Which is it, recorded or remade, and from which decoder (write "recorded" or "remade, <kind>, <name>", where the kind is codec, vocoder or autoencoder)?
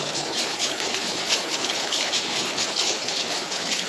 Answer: remade, codec, HILCodec